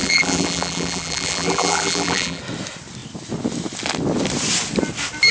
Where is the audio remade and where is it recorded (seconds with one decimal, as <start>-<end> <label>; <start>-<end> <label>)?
0.0-2.4 remade; 2.4-5.3 recorded